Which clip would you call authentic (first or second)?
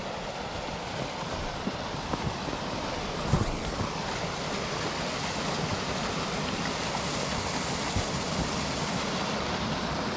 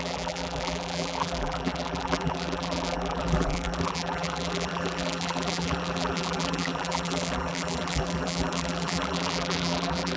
first